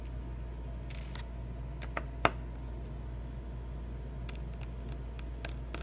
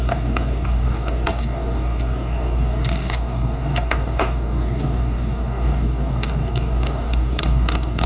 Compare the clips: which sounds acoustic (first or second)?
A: first